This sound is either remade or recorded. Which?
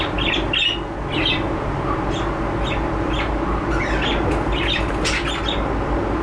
recorded